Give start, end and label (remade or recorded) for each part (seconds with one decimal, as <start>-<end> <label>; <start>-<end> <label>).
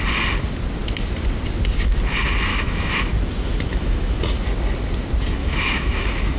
0.0-2.5 recorded; 2.5-3.1 remade; 3.1-3.7 recorded; 3.7-4.2 remade; 4.2-5.4 recorded; 5.4-6.4 remade